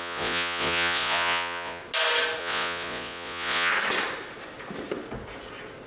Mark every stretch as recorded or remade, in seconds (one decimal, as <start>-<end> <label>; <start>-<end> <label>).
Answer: 0.0-1.8 remade; 1.8-2.4 recorded; 2.4-3.7 remade; 3.7-5.9 recorded